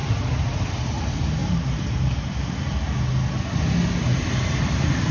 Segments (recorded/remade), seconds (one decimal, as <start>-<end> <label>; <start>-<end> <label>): 0.0-1.4 recorded; 1.4-2.3 remade; 2.3-4.1 recorded; 4.1-5.1 remade